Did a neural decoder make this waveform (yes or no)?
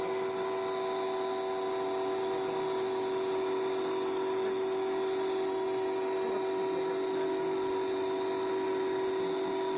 no